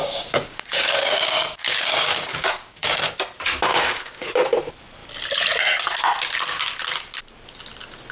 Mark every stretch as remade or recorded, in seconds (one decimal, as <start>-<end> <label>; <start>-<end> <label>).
0.0-2.9 remade; 2.9-3.7 recorded; 3.7-4.3 remade; 4.3-8.1 recorded